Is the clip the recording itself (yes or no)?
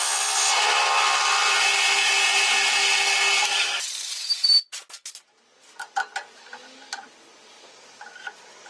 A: yes